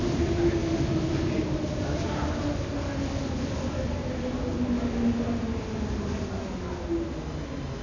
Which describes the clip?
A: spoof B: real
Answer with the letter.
B